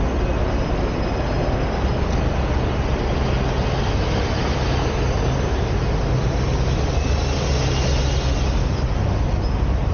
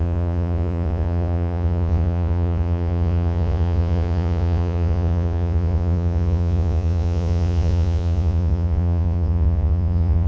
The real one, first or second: first